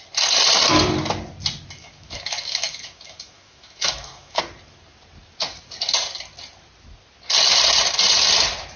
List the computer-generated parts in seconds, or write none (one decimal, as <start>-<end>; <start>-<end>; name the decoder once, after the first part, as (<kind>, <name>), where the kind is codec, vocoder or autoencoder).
1.8-4.4 (autoencoder, DAC-VAE)

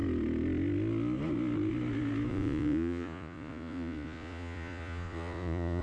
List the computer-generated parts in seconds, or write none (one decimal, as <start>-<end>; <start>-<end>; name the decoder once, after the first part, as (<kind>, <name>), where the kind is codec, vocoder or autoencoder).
2.3-5.8 (vocoder, Vocos)

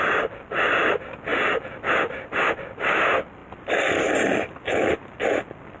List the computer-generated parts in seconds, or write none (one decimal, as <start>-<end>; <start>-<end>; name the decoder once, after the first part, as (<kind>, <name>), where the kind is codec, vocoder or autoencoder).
none

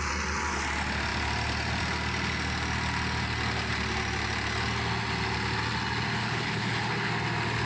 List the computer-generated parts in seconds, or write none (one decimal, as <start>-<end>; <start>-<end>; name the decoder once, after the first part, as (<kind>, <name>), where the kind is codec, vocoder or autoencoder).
6.2-7.1 (codec, HILCodec)